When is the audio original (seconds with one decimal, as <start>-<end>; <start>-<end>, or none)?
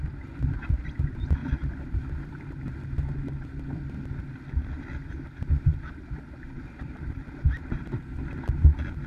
0.0-9.1